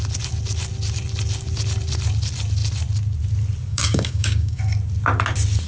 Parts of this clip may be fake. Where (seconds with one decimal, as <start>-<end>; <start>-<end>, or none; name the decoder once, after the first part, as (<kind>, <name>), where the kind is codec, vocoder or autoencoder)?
3.7-4.6 (codec, DAC)